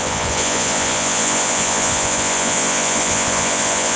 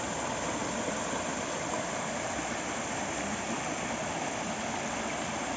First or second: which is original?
second